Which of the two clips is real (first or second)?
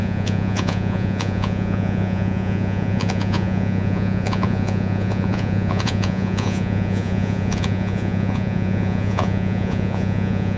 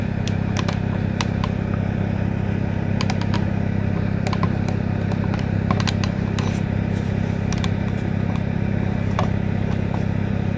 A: second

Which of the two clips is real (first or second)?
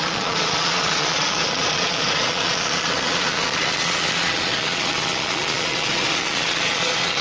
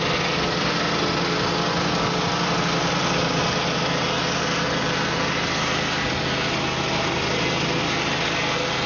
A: second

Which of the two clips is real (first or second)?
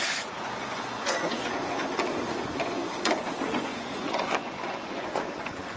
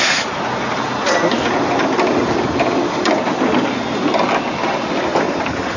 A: second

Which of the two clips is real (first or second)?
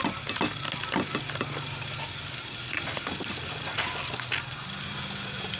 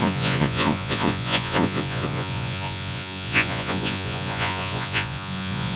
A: first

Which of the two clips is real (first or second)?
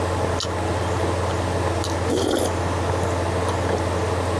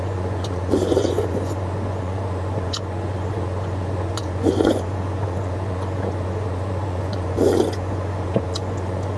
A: first